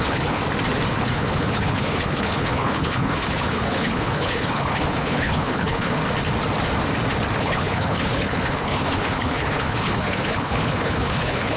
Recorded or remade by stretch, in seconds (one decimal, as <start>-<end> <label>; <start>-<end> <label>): 0.0-0.4 remade; 0.4-1.0 recorded; 1.0-6.0 remade; 6.0-7.4 recorded; 7.4-11.6 remade